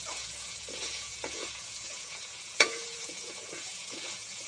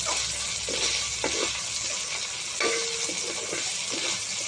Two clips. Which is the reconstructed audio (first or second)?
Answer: first